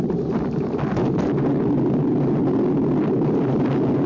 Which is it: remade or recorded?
recorded